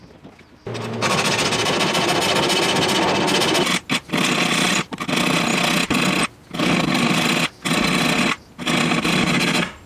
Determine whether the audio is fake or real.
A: real